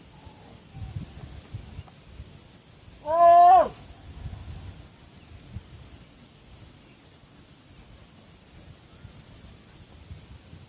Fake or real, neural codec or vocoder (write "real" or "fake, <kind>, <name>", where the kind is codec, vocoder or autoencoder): real